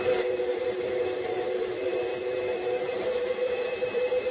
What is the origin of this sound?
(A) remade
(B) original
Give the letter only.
A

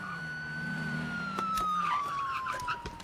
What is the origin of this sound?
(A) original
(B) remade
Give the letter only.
B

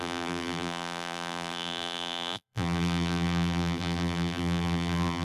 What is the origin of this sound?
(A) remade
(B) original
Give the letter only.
A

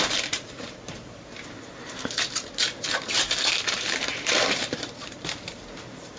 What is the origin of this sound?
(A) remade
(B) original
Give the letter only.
A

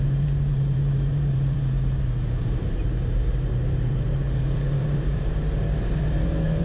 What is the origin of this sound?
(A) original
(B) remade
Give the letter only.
B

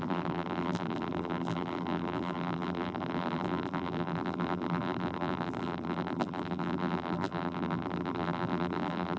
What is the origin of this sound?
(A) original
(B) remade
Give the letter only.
B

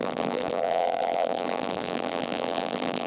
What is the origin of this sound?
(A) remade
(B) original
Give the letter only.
A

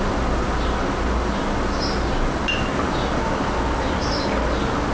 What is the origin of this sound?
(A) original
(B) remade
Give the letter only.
A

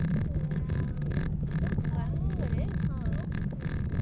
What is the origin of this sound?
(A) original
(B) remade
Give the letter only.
A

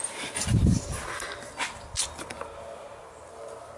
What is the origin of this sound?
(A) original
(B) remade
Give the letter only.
A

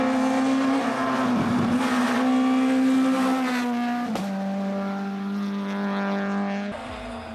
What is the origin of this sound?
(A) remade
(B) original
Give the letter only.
B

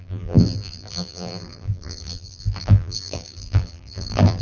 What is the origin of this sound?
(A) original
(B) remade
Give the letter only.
B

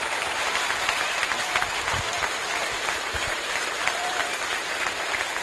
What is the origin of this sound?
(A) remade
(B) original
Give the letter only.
A